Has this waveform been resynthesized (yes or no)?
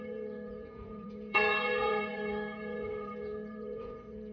yes